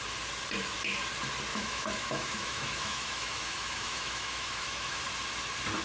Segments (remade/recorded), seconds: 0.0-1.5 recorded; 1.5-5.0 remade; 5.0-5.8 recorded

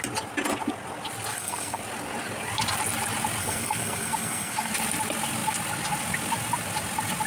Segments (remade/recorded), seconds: 0.0-1.3 recorded; 1.3-1.8 remade; 1.8-3.4 recorded; 3.4-4.7 remade; 4.7-7.3 recorded

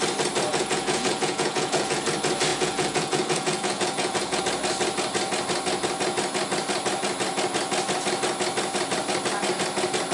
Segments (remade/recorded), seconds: 0.0-0.5 recorded; 0.5-2.0 remade; 2.0-2.5 recorded; 2.5-4.4 remade; 4.4-10.1 recorded